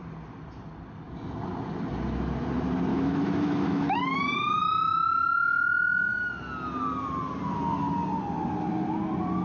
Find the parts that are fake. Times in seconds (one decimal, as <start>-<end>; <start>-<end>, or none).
2.9-4.6